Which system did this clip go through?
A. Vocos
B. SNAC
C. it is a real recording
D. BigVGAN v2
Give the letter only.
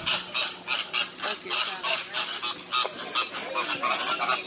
C